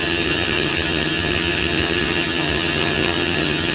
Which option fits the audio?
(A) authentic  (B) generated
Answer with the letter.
B